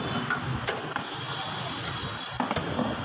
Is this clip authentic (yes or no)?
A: yes